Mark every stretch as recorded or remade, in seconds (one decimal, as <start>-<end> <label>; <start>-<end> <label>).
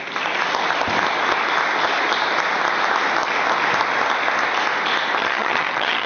0.0-5.2 recorded; 5.2-6.1 remade